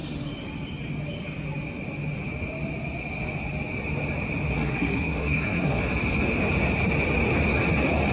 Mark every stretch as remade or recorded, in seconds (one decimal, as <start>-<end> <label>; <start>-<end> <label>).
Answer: 0.0-4.5 recorded; 4.5-5.8 remade; 5.8-8.1 recorded